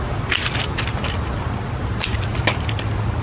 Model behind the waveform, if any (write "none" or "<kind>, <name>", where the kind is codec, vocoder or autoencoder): none